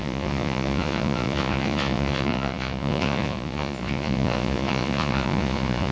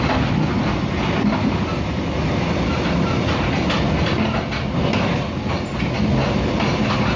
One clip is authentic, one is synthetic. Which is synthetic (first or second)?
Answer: first